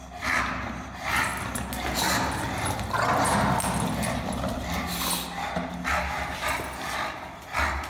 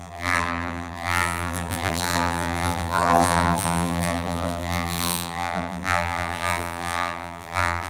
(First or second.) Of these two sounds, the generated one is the second